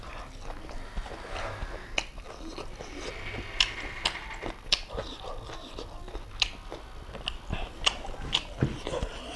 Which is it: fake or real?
real